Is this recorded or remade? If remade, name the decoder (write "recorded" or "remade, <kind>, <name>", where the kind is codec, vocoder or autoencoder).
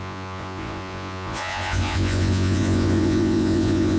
remade, vocoder, Vocos